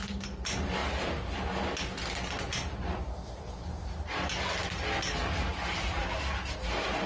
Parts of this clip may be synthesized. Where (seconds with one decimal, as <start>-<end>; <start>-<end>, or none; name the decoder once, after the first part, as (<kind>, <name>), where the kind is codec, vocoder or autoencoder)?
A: none